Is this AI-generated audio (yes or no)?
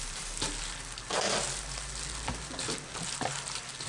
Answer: no